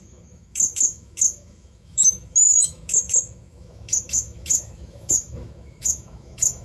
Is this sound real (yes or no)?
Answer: no